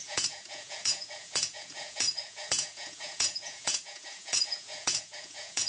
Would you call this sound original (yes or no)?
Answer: no